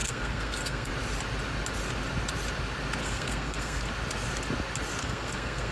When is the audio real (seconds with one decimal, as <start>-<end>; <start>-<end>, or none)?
0.9-3.0; 3.9-5.0